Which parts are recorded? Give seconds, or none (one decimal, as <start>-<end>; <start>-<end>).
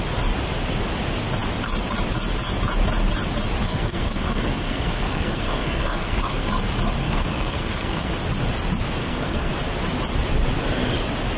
0.0-3.6; 6.5-7.0; 8.1-9.0; 9.5-11.4